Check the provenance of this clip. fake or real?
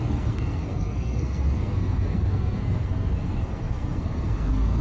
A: fake